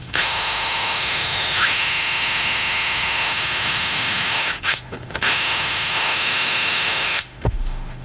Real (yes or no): no